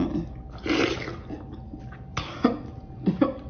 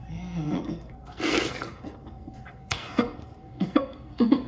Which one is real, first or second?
first